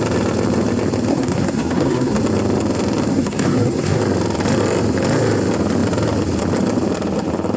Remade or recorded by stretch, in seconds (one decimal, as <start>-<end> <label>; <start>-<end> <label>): 0.0-1.1 recorded; 1.1-2.2 remade; 2.2-3.1 recorded; 3.1-4.0 remade; 4.0-7.6 recorded